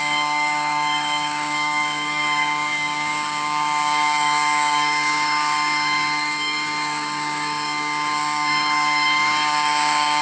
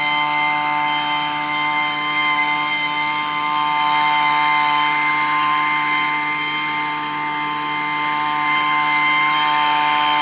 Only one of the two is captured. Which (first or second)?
second